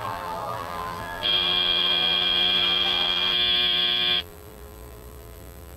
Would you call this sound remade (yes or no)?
yes